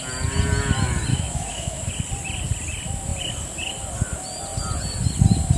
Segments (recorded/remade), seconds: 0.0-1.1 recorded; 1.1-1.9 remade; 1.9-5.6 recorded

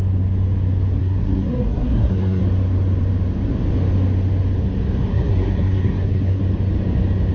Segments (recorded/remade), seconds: 0.0-1.0 recorded; 1.0-2.4 remade; 2.4-5.1 recorded; 5.1-6.4 remade; 6.4-7.3 recorded

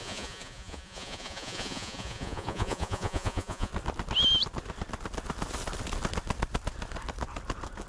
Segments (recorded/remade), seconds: 0.0-3.7 remade; 3.7-7.9 recorded

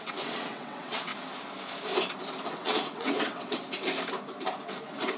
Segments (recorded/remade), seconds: 0.0-1.1 remade; 1.1-2.5 recorded; 2.5-3.6 remade; 3.6-5.2 recorded